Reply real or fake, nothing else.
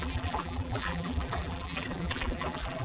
fake